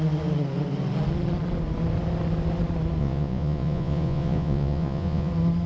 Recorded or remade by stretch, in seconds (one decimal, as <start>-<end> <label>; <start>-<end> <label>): 0.0-3.0 recorded; 3.0-5.3 remade; 5.3-5.7 recorded